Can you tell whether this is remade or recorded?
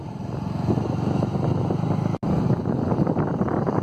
recorded